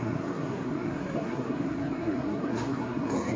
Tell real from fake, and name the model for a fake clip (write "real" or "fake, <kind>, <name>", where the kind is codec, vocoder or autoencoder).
fake, codec, SNAC